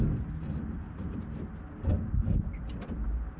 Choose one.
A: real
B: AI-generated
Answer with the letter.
A